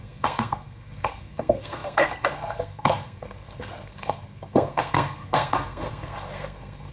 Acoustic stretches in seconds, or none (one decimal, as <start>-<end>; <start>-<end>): none